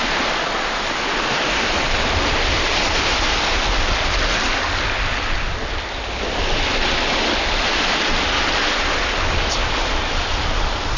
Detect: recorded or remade recorded